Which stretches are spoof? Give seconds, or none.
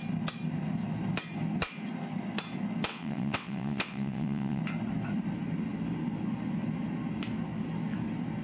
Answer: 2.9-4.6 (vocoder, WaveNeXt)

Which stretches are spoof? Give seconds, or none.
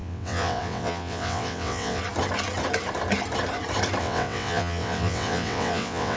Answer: 0.0-2.0 (vocoder, WaveNeXt); 4.0-6.2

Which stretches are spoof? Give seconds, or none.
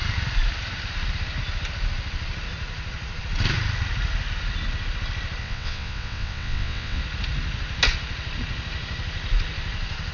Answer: 5.4-7.0 (vocoder, WaveNeXt)